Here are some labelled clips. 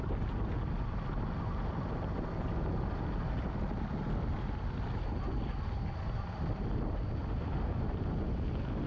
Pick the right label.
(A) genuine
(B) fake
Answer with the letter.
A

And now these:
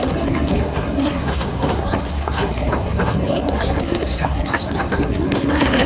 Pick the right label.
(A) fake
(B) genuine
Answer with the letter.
A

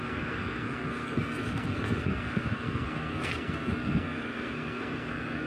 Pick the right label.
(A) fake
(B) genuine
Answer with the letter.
A